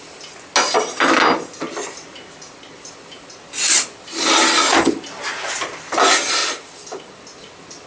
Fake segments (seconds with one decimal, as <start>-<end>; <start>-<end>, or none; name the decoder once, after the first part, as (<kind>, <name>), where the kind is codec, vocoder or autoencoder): 6.4-7.0 (vocoder, BigVGAN v2)